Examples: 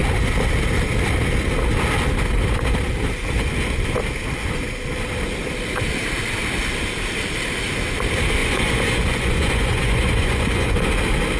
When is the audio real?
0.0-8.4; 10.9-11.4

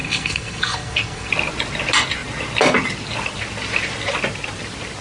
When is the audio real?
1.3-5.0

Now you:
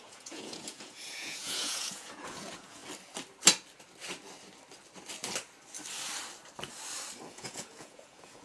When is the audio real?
2.8-7.3

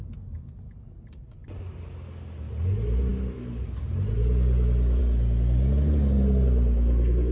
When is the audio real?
0.0-7.3

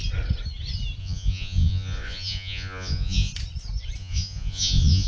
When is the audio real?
0.0-1.0; 3.3-4.0